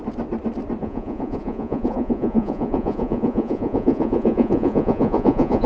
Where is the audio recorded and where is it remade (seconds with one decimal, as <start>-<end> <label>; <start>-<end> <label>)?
0.0-0.8 recorded; 0.8-5.7 remade